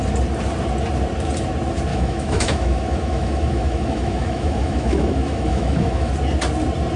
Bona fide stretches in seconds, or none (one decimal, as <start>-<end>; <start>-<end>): 0.0-1.9; 6.1-7.0